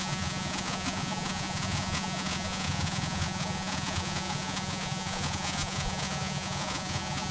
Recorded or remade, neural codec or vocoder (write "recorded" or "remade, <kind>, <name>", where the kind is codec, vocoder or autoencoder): remade, vocoder, Vocos